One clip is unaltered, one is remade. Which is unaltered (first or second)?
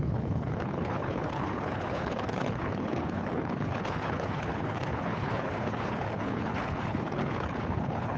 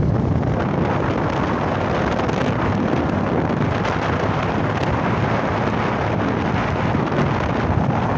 second